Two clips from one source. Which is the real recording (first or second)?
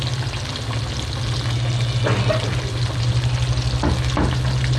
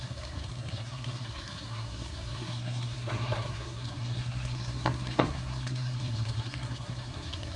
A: first